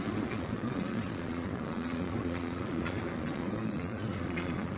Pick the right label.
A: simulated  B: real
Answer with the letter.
A